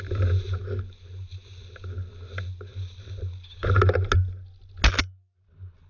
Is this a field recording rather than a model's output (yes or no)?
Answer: yes